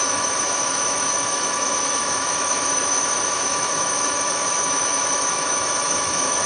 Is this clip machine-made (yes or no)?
yes